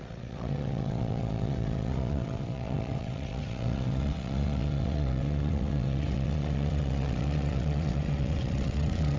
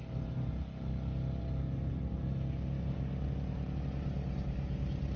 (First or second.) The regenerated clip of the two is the first